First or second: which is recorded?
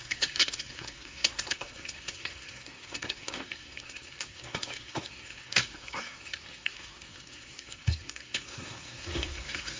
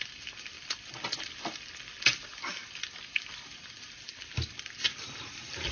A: second